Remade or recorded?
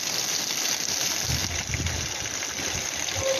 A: recorded